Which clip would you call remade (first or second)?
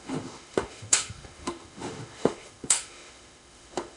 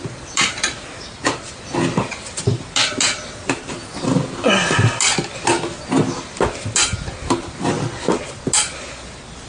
first